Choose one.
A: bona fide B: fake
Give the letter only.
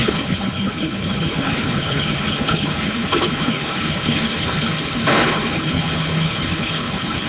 B